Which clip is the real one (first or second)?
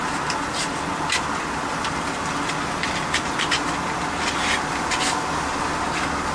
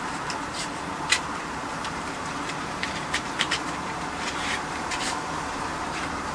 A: first